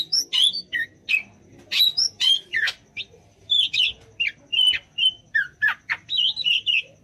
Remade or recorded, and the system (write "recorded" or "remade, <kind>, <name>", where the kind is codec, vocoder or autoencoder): recorded